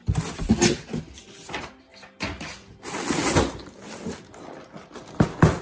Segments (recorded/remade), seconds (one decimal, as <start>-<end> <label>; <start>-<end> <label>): 0.0-5.6 recorded